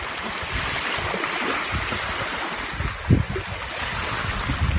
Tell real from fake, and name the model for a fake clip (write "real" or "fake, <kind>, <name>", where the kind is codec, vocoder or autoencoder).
real